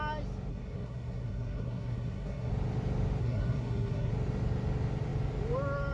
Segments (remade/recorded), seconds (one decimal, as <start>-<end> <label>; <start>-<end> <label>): 0.0-0.5 recorded; 0.5-2.5 remade; 2.5-3.2 recorded; 3.2-4.1 remade; 4.1-5.9 recorded